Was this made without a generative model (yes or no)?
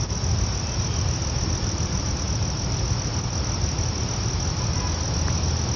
yes